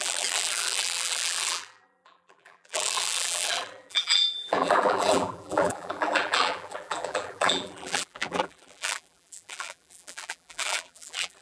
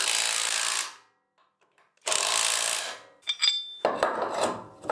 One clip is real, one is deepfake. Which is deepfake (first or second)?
first